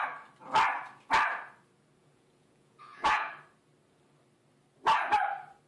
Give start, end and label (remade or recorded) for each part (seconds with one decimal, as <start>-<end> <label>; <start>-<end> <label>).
0.0-2.0 recorded; 2.0-3.3 remade; 3.3-5.7 recorded